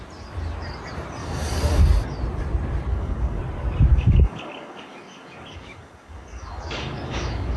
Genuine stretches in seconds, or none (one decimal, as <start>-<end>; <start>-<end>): 0.0-1.2; 1.8-2.9; 3.4-3.9